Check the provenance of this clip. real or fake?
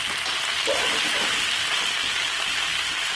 real